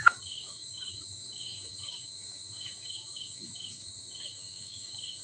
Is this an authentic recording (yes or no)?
no